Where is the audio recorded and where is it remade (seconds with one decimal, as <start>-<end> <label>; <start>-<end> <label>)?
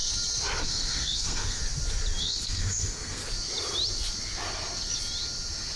0.0-0.6 recorded; 0.6-1.6 remade; 1.6-2.2 recorded; 2.2-3.2 remade; 3.2-5.8 recorded